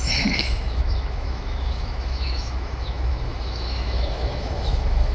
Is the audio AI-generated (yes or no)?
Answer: yes